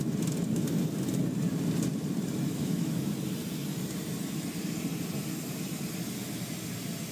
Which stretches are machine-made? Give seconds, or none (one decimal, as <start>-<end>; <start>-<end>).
2.5-3.1